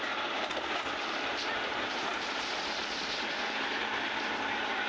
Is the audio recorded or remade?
remade